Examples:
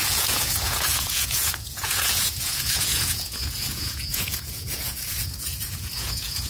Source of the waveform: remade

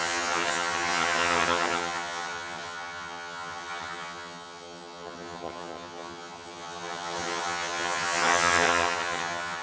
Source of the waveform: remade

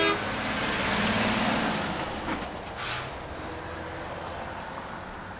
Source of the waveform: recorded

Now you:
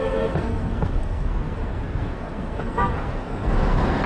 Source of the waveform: remade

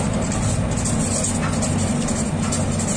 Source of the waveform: recorded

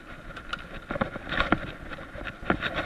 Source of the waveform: recorded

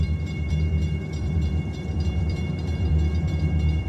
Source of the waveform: remade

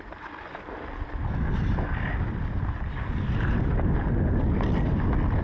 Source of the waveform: recorded